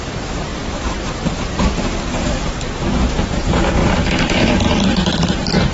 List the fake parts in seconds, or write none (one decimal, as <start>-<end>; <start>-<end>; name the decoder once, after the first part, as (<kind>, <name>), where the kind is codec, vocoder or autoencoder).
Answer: 0.0-0.5 (vocoder, BigVGAN v2); 3.2-5.7